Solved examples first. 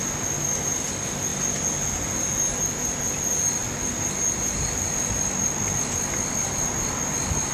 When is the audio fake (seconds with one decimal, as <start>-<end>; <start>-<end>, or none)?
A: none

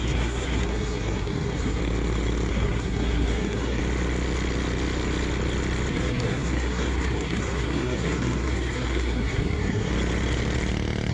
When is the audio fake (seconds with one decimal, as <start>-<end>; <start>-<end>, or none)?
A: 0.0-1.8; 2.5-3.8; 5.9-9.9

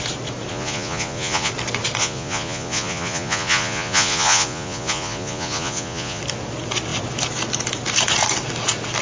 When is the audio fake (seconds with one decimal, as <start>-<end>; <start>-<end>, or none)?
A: 0.5-1.5; 2.0-6.2